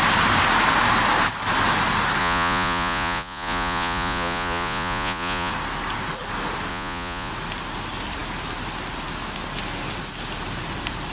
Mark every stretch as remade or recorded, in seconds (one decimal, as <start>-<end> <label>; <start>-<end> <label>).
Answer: 0.0-2.2 recorded; 2.2-5.5 remade; 5.5-6.7 recorded; 6.7-7.3 remade; 7.3-11.1 recorded